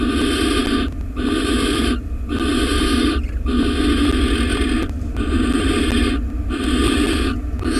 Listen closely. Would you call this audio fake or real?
real